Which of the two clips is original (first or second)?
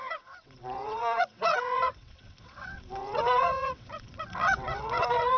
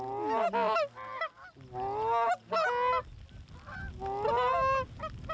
second